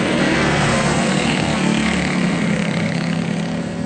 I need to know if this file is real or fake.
fake